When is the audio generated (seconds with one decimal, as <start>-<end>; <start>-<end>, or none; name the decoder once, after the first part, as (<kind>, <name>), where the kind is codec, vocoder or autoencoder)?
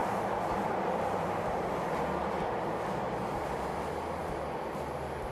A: none